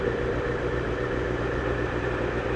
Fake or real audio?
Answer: real